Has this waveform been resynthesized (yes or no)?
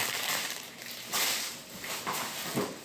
yes